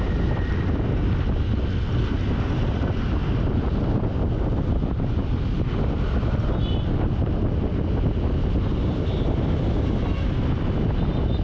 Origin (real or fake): real